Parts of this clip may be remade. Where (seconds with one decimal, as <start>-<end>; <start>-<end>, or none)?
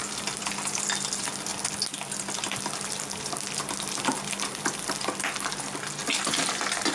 0.0-0.5; 6.0-6.9